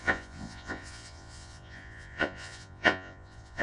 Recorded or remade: remade